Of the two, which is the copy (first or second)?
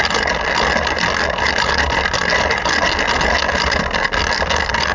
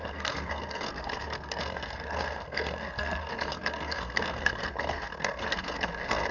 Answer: second